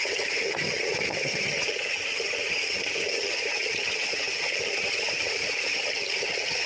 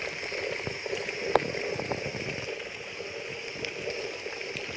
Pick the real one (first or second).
second